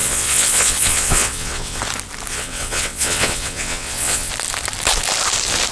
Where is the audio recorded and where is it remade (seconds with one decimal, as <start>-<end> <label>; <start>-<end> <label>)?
0.0-1.8 remade; 1.8-2.3 recorded; 2.3-4.3 remade; 4.3-5.7 recorded